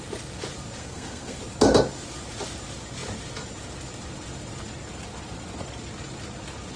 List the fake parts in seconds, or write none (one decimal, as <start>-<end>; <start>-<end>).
0.8-1.4